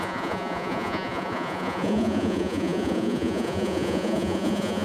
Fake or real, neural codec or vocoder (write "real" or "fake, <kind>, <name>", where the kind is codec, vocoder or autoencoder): fake, vocoder, Vocos